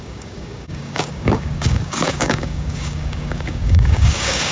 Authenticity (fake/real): fake